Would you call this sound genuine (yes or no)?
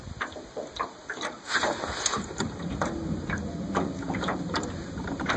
no